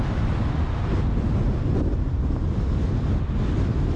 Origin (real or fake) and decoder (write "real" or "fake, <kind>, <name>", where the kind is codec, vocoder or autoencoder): real